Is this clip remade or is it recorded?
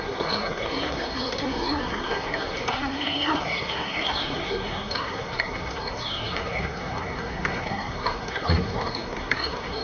remade